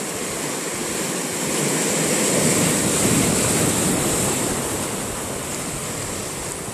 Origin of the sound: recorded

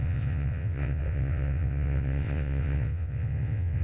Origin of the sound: remade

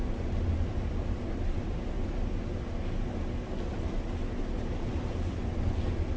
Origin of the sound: recorded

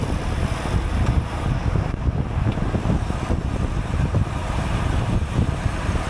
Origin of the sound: recorded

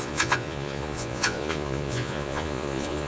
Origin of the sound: remade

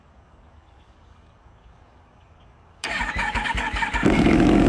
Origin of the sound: remade